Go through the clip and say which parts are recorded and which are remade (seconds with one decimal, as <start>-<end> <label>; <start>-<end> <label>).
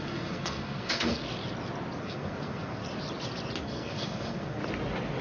0.0-1.2 remade; 1.2-2.0 recorded; 2.0-2.8 remade; 2.8-3.6 recorded; 3.6-4.6 remade; 4.6-5.2 recorded